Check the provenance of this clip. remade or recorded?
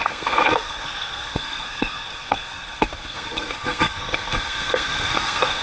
remade